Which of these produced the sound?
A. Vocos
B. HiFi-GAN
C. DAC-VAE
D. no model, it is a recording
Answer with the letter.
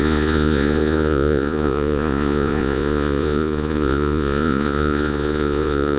A